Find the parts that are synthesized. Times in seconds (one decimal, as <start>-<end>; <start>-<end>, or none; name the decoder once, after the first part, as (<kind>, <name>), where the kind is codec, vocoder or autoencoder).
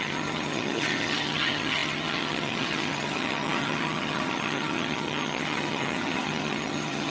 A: 0.0-7.1 (vocoder, HiFi-GAN)